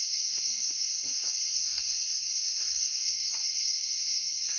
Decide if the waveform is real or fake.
fake